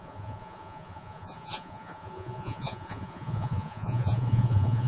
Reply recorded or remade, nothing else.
remade